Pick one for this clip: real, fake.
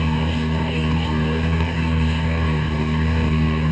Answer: fake